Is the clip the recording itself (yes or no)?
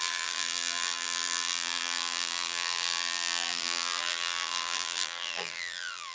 no